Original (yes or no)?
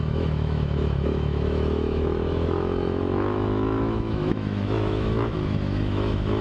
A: no